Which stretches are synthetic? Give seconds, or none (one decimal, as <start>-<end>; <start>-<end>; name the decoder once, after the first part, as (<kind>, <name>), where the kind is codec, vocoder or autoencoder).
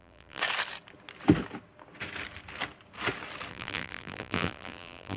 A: 0.0-0.4 (vocoder, BigVGAN v2); 3.5-5.2